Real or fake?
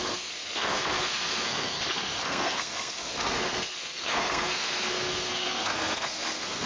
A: fake